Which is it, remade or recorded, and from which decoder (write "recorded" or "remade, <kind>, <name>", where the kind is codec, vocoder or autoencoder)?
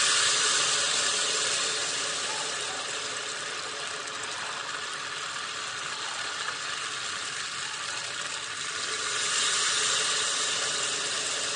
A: recorded